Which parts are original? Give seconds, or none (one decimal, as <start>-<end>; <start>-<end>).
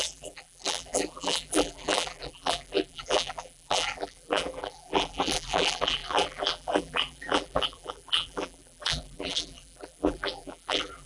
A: none